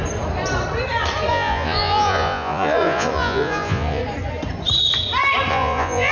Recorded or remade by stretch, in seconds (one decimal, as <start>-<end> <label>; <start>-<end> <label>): 0.0-1.3 recorded; 1.3-4.0 remade; 4.0-5.5 recorded; 5.5-6.1 remade